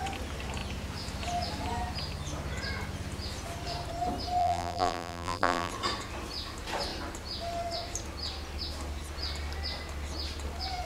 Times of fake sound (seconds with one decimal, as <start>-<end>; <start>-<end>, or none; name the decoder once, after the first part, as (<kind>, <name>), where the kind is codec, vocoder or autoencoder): 4.4-5.7 (vocoder, BigVGAN v2)